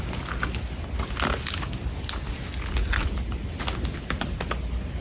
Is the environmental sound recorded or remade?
recorded